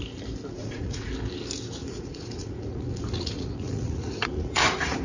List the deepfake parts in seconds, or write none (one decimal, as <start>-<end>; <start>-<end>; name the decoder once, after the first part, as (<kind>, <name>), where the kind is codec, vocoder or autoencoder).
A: 0.6-1.1 (vocoder, Vocos); 1.8-5.0